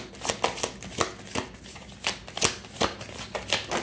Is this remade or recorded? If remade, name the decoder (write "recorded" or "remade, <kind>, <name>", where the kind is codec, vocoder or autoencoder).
recorded